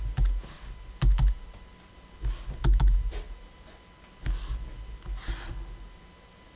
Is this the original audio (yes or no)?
yes